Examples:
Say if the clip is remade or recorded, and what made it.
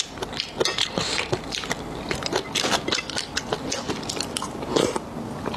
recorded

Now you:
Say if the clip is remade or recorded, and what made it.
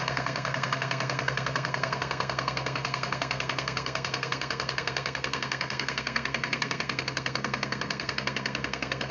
remade, codec, SNAC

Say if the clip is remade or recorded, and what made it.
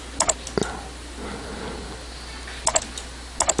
recorded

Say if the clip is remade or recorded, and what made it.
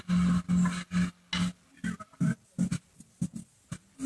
recorded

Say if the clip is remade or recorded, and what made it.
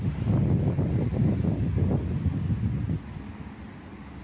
recorded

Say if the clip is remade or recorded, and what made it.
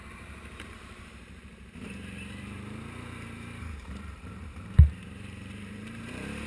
remade, vocoder, BigVGAN v2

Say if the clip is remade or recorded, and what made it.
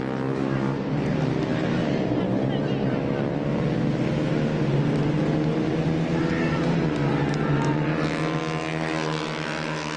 recorded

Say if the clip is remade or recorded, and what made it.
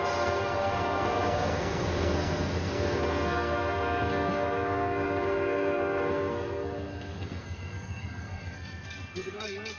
remade, codec, SNAC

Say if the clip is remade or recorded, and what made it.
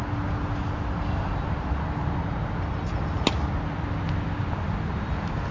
recorded